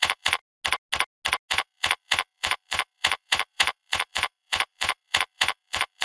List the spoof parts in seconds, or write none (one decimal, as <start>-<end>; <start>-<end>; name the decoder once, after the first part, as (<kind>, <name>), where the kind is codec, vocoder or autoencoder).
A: 0.0-0.4 (vocoder, Vocos); 1.5-6.0